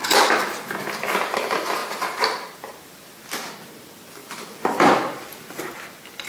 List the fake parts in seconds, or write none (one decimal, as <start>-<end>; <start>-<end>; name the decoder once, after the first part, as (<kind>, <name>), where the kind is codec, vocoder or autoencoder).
4.2-5.6 (vocoder, BigVGAN v2)